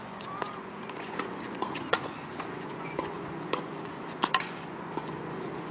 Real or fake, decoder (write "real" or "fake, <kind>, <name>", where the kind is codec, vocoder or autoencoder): fake, vocoder, Vocos